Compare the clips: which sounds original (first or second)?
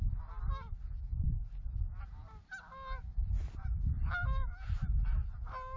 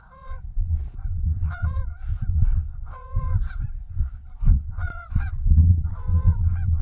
first